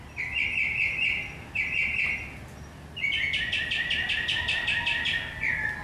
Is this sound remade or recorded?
recorded